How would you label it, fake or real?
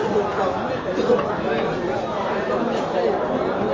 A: real